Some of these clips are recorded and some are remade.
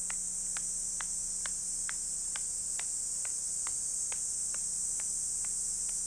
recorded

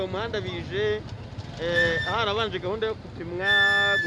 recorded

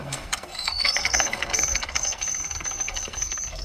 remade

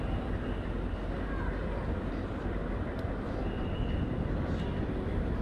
recorded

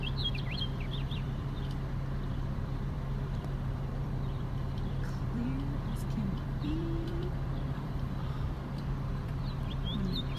remade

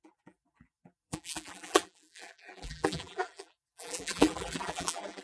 remade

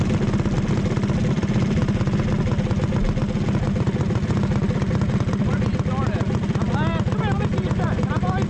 recorded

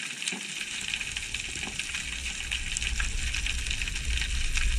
recorded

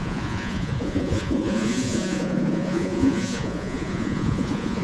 remade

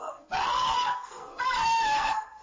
remade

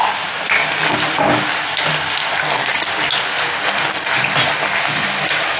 recorded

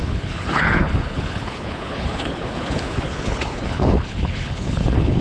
remade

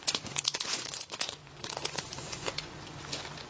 remade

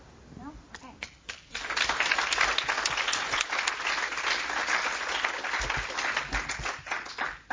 recorded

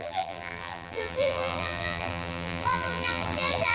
remade